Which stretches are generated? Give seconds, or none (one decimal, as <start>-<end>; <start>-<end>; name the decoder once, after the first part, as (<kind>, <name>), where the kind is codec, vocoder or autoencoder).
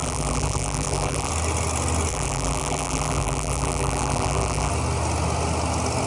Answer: 0.0-1.3 (vocoder, BigVGAN v2); 2.1-4.7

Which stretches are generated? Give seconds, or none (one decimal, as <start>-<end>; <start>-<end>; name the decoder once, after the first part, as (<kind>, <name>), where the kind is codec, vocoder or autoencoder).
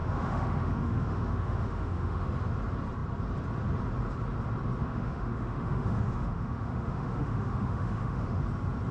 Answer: 0.0-2.3 (autoencoder, DAC-VAE); 4.8-8.4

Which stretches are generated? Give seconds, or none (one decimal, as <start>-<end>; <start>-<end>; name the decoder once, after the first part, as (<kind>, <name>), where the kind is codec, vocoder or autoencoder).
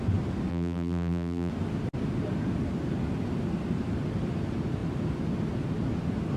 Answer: 0.5-1.5 (vocoder, BigVGAN v2)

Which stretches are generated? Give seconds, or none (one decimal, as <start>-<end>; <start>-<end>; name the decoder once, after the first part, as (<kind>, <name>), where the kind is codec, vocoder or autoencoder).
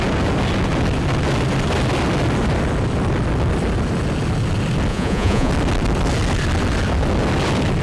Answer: 4.9-5.5 (vocoder, Vocos)